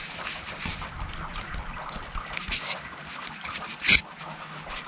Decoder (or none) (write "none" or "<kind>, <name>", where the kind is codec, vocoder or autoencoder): none